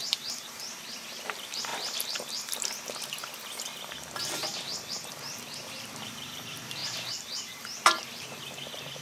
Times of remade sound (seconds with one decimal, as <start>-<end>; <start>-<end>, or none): 0.0-1.7; 4.9-9.0